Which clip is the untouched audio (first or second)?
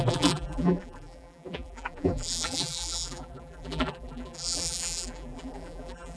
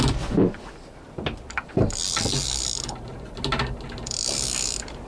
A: second